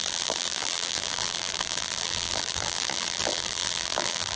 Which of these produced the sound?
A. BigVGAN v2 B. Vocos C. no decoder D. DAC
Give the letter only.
A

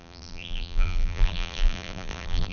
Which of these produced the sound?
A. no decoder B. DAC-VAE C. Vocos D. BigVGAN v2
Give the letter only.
D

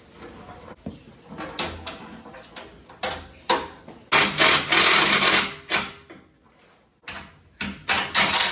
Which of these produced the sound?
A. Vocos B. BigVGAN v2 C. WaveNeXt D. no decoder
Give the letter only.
D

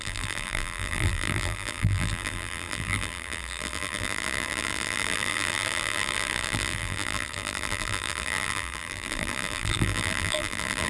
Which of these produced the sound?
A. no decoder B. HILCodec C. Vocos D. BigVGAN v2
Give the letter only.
D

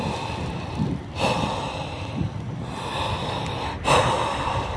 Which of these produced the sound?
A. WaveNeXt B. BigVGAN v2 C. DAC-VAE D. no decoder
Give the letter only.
D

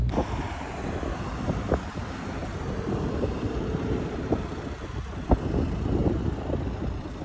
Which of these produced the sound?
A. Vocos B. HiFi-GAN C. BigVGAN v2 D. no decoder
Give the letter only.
C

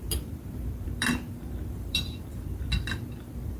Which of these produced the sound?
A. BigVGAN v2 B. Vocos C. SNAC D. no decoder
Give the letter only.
A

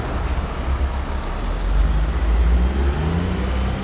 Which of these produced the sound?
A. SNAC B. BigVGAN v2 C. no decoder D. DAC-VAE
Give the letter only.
C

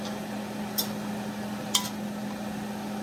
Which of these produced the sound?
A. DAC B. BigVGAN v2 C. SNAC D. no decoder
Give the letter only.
D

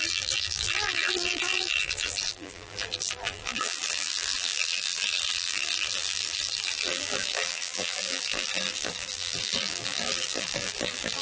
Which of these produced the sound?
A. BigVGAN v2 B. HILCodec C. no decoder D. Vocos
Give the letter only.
A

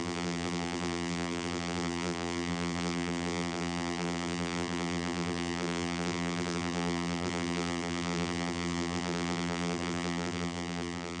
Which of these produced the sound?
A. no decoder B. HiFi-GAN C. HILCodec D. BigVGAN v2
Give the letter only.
D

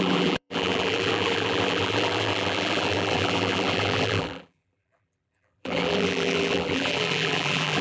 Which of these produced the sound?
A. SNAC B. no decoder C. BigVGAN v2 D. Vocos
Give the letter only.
C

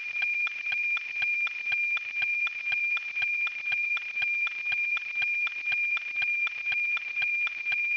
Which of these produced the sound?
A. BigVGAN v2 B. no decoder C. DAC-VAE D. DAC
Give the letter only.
A